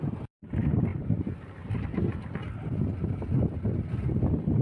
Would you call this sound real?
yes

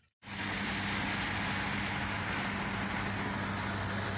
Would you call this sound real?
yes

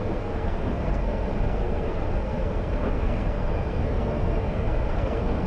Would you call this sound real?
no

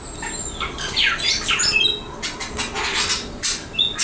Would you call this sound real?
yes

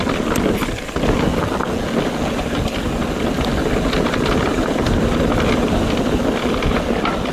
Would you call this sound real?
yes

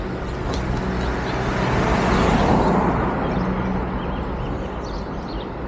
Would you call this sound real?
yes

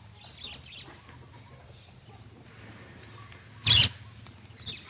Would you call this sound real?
yes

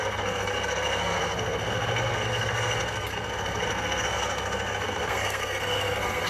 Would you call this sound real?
no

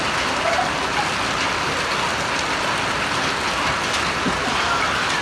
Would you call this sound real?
yes